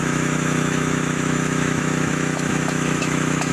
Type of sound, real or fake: fake